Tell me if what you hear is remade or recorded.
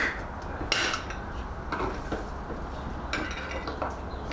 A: recorded